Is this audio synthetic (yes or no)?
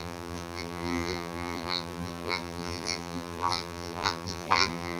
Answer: yes